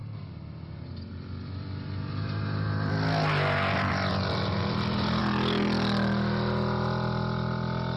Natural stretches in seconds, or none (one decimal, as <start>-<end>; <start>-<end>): 0.0-8.0